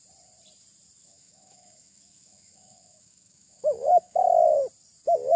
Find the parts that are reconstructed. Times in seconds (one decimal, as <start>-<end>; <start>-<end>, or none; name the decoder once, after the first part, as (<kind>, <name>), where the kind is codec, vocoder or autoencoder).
1.0-4.2 (autoencoder, DAC-VAE)

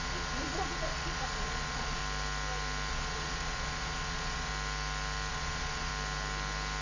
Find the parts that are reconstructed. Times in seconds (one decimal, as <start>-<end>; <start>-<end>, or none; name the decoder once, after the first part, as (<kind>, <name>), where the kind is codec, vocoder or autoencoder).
0.0-2.0 (vocoder, Vocos); 2.9-4.5; 5.3-5.9